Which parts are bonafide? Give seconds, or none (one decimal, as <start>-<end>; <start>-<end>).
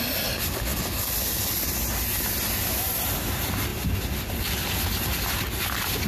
0.0-6.1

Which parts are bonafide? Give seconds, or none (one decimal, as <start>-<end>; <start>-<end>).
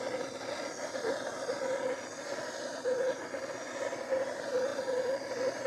0.0-5.7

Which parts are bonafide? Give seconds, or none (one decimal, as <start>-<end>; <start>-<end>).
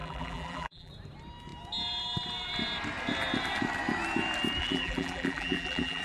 0.9-4.6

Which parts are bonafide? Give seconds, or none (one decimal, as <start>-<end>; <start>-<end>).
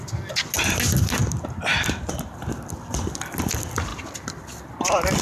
0.0-1.7; 3.3-3.9; 4.7-5.2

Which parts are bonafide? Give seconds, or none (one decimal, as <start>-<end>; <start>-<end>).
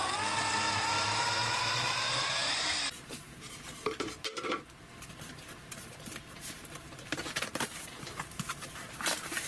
0.0-0.8; 2.4-3.1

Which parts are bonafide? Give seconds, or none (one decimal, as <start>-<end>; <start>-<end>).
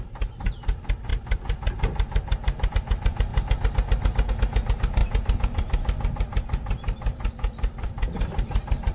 0.0-5.0